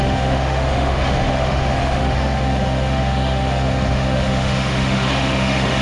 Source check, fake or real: fake